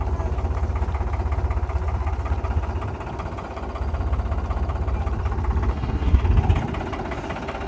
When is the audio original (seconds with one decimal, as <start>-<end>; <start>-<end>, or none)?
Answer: 0.0-5.7; 6.2-7.7